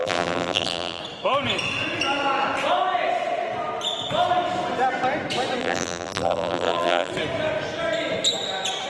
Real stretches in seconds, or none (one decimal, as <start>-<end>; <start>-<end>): 1.0-5.6; 7.1-8.9